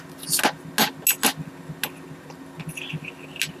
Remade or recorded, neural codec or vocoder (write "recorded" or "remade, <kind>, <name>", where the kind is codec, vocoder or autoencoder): recorded